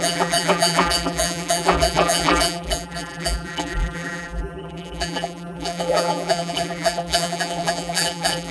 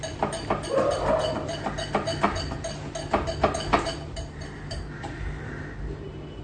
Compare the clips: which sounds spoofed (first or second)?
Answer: first